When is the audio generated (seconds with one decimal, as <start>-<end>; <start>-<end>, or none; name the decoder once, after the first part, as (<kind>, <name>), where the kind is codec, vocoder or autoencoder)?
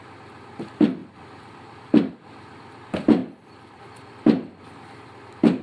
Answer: 1.0-2.1 (vocoder, BigVGAN v2); 3.2-3.8